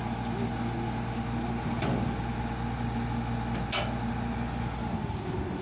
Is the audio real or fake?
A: real